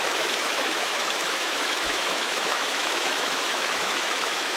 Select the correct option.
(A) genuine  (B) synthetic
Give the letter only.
B